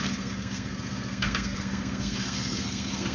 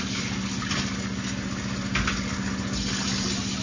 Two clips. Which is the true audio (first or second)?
second